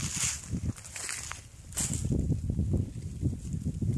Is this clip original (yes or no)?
yes